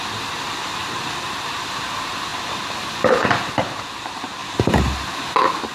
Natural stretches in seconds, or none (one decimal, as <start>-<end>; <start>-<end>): 0.8-1.3